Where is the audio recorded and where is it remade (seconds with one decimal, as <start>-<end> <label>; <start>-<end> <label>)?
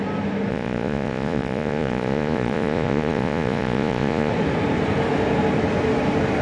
0.0-0.5 recorded; 0.5-4.3 remade; 4.3-6.4 recorded